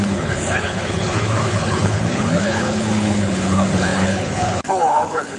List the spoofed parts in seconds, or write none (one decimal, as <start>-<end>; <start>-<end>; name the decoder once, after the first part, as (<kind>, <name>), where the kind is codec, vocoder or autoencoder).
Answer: 0.0-5.4 (codec, HILCodec)